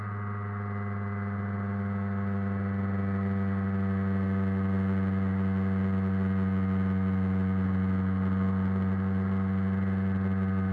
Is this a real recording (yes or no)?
yes